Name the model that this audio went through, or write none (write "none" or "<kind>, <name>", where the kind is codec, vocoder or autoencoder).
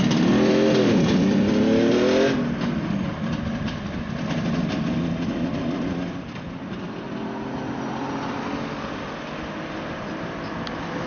none